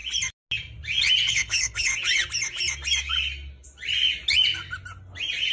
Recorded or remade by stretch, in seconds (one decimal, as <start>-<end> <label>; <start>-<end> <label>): 0.0-1.3 recorded; 1.3-1.9 remade; 1.9-5.5 recorded